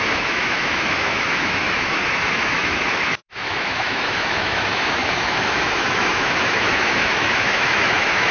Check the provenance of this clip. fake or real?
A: fake